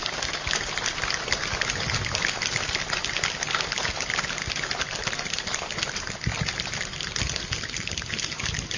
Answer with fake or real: real